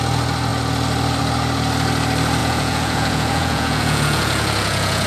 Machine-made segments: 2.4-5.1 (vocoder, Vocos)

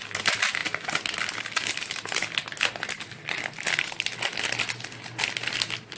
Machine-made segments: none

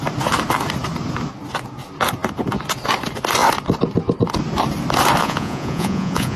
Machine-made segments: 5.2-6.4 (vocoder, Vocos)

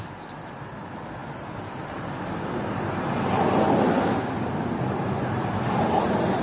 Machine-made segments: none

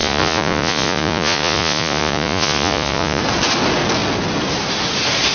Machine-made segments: 0.0-3.2 (vocoder, Vocos)

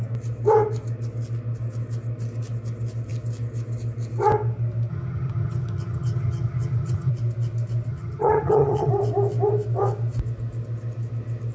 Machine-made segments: 4.9-7.1 (vocoder, HiFi-GAN); 7.9-8.9